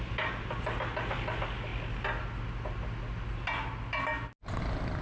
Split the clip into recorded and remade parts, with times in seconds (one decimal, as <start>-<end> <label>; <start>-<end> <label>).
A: 0.0-5.0 recorded